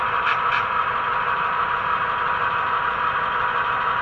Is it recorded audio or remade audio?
recorded